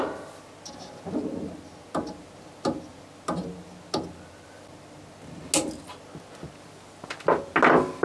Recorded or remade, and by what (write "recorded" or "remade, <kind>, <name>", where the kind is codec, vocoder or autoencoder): recorded